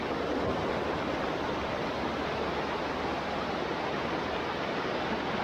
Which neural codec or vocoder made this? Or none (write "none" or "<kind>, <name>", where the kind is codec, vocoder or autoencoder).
none